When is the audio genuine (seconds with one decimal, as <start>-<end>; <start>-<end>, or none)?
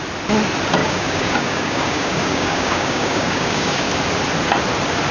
0.0-0.8; 3.9-5.1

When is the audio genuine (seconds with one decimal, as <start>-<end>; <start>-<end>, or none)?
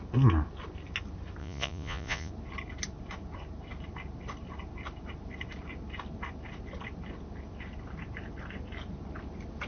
0.0-1.4; 2.3-9.7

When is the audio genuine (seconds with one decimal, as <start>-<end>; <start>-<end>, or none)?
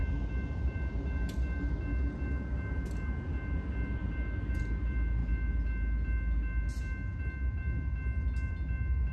0.0-9.1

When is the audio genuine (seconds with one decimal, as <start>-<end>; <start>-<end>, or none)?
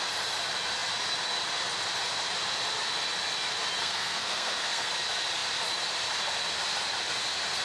0.0-3.8; 4.9-7.6